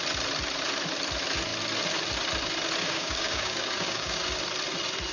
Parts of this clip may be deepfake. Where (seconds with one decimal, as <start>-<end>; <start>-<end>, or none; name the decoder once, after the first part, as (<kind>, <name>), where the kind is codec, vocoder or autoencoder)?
2.8-4.3 (codec, DAC)

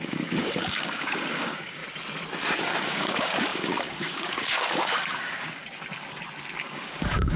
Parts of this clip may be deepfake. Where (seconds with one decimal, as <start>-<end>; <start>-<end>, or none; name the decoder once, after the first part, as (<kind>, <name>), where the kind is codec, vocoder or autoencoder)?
0.0-1.8 (codec, DAC); 2.6-5.6; 6.6-7.4

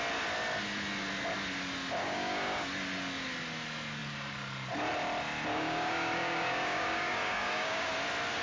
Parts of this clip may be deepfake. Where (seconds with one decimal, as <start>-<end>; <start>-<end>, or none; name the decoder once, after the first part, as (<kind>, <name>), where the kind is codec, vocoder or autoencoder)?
2.0-2.7 (codec, DAC); 5.5-7.9

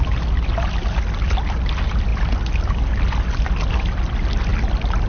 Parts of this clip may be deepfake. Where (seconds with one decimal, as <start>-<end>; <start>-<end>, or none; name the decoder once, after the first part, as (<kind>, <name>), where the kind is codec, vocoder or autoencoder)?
none

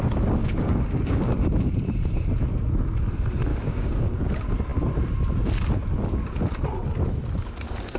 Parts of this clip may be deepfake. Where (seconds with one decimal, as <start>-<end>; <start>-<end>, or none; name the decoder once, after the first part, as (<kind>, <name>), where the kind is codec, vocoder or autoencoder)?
0.4-1.7 (codec, DAC); 3.5-4.2

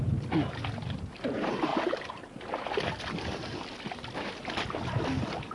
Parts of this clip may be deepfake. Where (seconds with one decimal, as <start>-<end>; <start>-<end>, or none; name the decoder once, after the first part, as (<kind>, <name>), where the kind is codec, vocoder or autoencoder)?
none